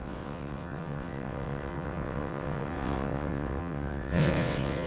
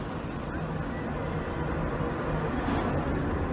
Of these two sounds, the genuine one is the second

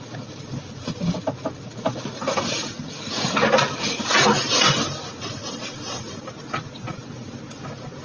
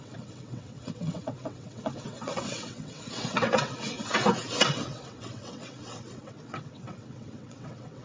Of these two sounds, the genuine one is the first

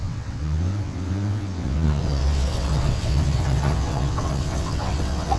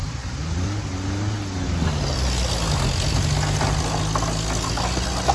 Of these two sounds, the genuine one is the second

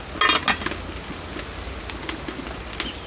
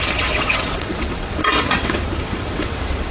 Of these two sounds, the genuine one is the first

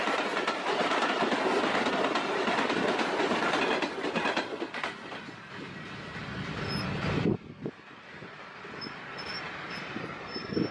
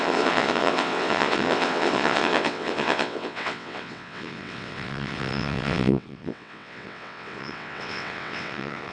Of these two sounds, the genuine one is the first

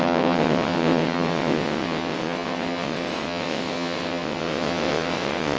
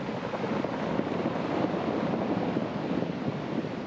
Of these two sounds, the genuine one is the second